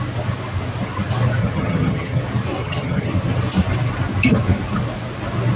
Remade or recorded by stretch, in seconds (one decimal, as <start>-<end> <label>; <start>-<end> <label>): 0.0-1.4 recorded; 1.4-2.2 remade; 2.2-2.6 recorded; 2.6-3.1 remade; 3.1-5.6 recorded